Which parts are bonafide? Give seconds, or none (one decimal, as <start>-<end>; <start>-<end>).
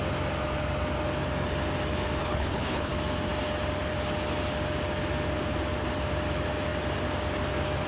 0.0-2.2; 2.9-7.9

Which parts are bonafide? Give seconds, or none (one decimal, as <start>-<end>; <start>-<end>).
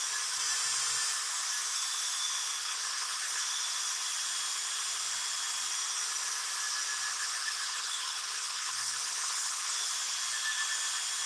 0.0-2.6; 3.4-7.1; 9.7-11.3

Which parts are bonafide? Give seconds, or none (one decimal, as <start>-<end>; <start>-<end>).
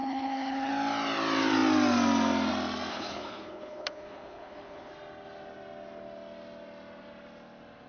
0.7-2.9; 4.9-7.9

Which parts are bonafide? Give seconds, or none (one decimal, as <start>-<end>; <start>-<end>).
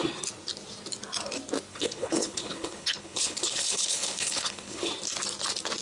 0.0-1.7; 4.9-5.8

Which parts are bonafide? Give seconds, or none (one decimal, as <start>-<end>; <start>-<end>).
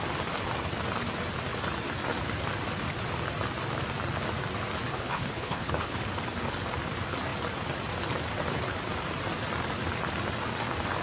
0.0-4.9; 6.0-11.0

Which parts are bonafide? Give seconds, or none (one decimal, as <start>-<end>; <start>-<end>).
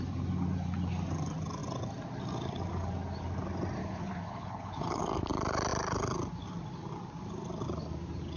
0.0-3.8; 5.0-8.4